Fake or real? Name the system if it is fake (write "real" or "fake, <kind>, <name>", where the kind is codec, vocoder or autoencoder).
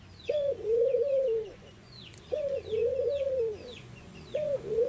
fake, vocoder, Vocos